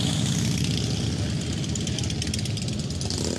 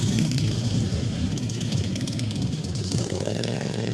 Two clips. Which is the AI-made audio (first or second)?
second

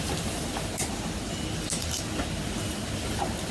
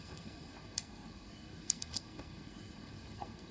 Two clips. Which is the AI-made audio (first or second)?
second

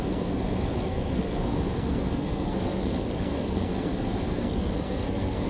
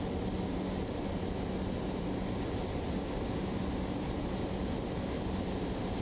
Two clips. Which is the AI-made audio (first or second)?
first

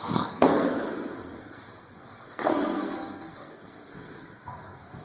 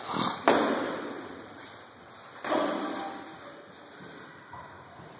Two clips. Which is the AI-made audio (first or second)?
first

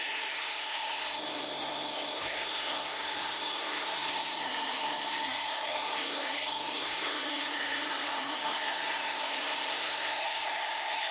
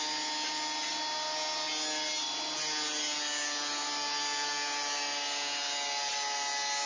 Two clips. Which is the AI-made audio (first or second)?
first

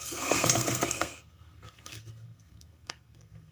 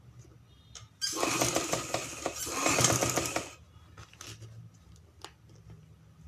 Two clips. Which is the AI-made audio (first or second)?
first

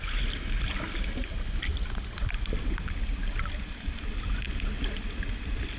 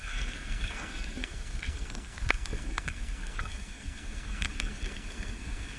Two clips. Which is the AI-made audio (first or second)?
second